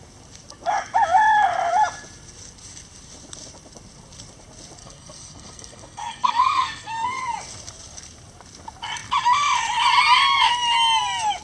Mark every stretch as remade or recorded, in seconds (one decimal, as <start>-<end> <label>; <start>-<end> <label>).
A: 0.0-4.8 recorded; 4.8-7.2 remade; 7.2-11.4 recorded